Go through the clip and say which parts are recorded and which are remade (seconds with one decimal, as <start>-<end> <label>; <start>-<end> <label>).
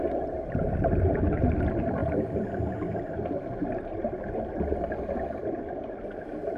0.0-6.6 recorded